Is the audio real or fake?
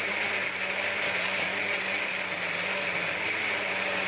real